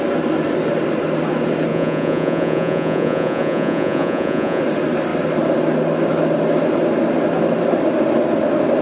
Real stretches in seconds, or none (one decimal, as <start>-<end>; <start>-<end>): 0.0-1.7; 4.6-8.8